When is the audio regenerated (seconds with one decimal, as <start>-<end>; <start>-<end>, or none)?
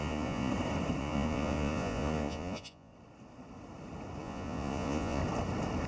0.0-0.5; 1.0-2.9; 4.2-5.2